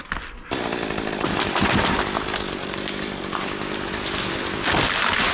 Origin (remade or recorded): recorded